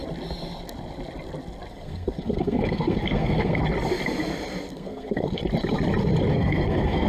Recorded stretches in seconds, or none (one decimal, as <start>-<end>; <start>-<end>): 0.0-1.7; 3.6-4.7; 5.4-6.3